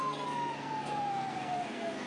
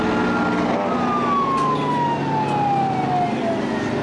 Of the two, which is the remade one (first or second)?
first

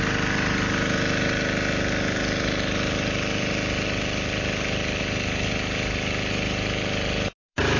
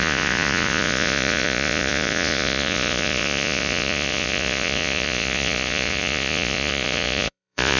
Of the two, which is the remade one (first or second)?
second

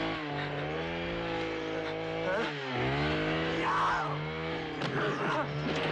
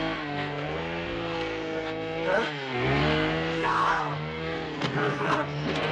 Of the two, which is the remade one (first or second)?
second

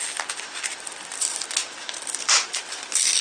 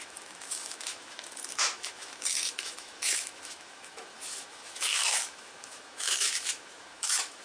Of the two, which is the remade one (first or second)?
second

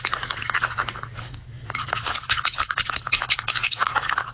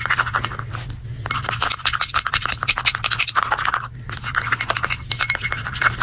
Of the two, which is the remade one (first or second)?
first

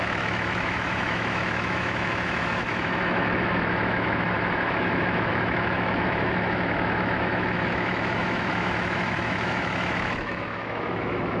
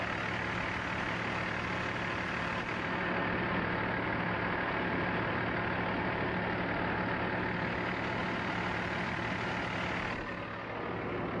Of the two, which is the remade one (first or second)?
first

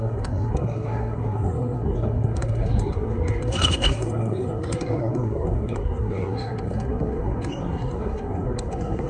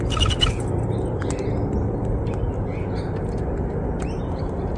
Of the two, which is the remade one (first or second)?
first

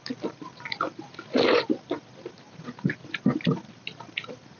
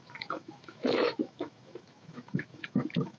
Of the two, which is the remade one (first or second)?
second